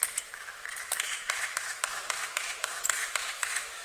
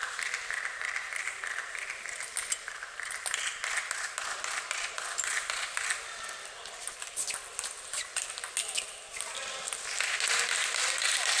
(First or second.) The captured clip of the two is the second